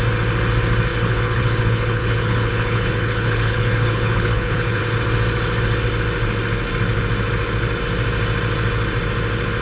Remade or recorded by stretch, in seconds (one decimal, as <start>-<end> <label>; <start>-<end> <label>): 0.0-0.9 recorded; 0.9-4.8 remade; 4.8-9.6 recorded

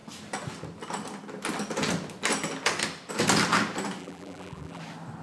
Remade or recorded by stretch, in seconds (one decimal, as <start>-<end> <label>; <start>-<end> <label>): 0.0-4.0 recorded; 4.0-4.8 remade; 4.8-5.2 recorded